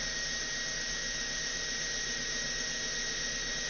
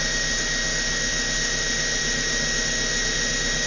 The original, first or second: second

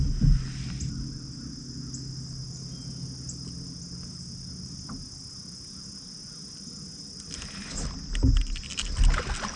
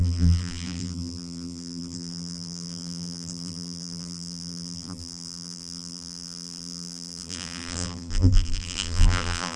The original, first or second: first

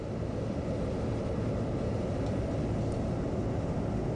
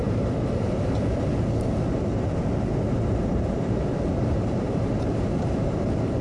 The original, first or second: first